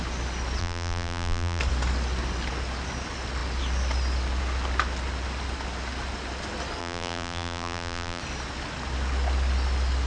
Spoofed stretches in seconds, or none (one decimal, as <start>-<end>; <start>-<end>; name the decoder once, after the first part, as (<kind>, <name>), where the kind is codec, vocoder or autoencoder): 0.6-1.6 (vocoder, BigVGAN v2); 6.8-8.2